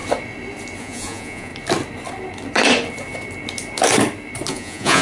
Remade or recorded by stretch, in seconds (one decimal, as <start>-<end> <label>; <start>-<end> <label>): 0.0-0.8 recorded; 0.8-1.5 remade; 1.5-4.5 recorded; 4.5-5.0 remade